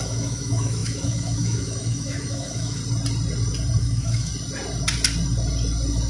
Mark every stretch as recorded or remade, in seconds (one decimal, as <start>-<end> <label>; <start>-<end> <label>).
0.0-2.8 remade; 2.8-3.8 recorded; 3.8-4.3 remade; 4.3-6.1 recorded